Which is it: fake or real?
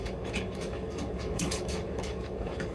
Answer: fake